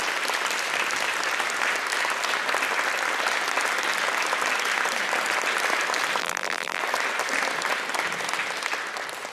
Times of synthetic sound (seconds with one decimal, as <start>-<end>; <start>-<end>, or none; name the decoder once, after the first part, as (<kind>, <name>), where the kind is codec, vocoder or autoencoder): 6.2-6.8 (vocoder, BigVGAN v2)